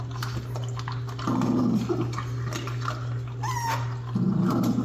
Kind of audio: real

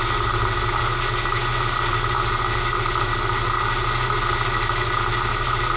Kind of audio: real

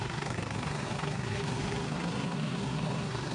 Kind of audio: fake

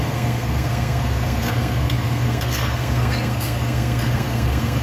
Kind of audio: fake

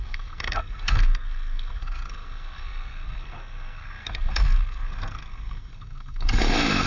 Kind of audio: fake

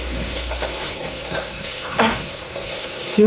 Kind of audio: fake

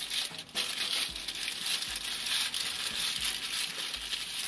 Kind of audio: real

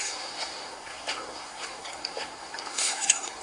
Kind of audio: fake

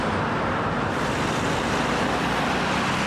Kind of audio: real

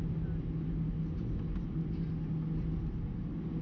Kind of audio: real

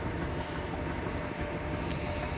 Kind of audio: real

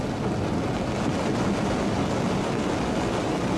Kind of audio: real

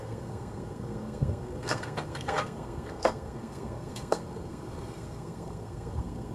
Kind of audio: fake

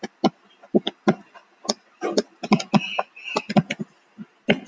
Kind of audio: real